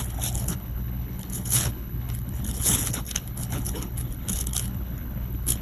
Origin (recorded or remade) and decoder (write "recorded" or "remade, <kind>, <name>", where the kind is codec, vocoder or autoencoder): remade, codec, HILCodec